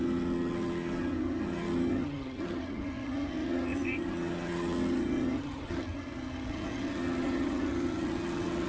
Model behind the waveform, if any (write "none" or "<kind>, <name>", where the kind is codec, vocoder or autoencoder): vocoder, HiFi-GAN